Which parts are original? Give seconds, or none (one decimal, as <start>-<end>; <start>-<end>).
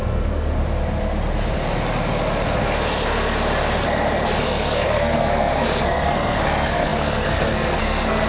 0.6-4.4